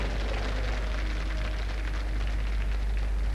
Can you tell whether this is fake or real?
real